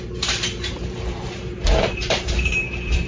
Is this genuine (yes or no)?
no